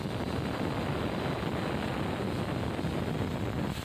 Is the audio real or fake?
real